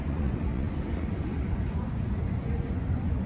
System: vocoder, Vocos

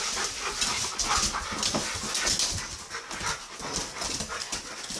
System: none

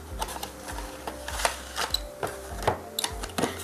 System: none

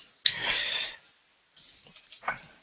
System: none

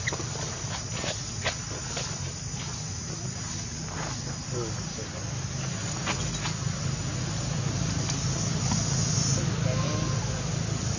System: none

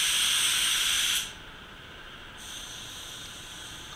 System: none